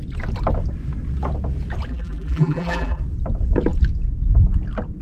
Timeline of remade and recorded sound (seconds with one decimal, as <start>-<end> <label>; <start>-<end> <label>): 0.0-1.9 recorded; 1.9-3.0 remade; 3.0-5.0 recorded